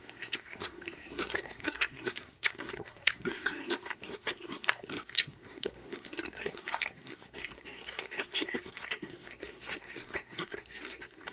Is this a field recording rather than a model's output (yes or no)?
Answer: no